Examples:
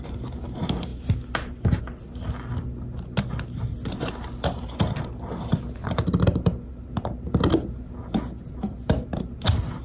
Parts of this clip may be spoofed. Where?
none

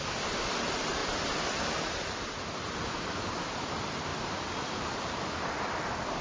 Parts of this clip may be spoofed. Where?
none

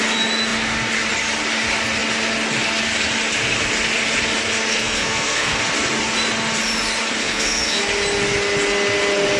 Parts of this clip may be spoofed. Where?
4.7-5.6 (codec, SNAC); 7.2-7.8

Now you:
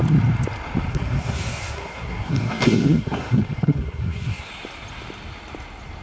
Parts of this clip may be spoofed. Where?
0.9-4.5 (codec, SNAC)

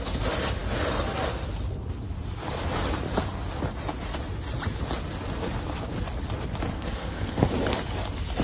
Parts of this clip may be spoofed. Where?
6.7-7.5 (codec, SNAC)

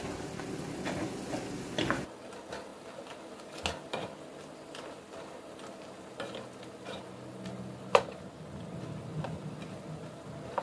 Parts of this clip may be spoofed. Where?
none

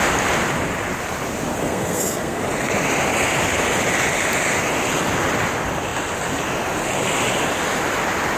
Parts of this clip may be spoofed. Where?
1.5-2.4 (codec, SNAC)